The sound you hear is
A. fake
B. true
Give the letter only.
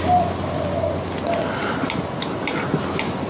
B